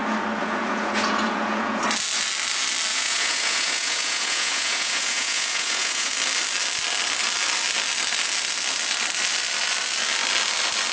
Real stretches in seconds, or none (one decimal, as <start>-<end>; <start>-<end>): 0.0-0.4; 1.8-2.9; 6.1-10.9